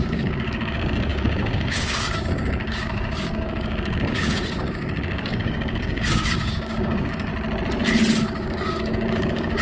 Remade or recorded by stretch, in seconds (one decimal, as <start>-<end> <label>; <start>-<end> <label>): 0.0-7.3 remade; 7.3-8.2 recorded; 8.2-9.6 remade